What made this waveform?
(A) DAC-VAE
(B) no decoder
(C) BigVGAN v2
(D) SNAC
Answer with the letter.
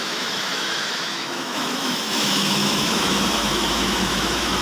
A